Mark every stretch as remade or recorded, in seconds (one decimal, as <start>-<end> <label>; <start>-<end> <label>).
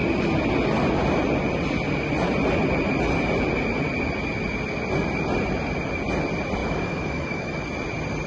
0.0-6.6 recorded; 6.6-7.6 remade; 7.6-8.3 recorded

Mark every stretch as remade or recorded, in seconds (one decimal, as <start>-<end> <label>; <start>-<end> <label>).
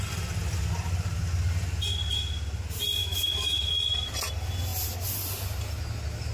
0.0-3.0 recorded; 3.0-3.7 remade; 3.7-6.3 recorded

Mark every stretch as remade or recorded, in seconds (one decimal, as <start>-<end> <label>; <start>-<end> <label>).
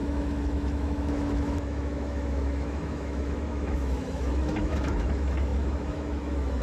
0.0-6.6 remade